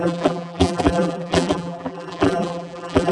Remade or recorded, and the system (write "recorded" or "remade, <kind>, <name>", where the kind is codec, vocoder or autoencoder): remade, vocoder, BigVGAN v2